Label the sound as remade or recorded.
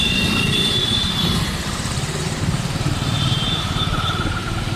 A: remade